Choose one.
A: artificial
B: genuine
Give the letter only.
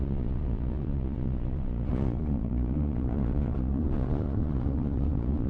A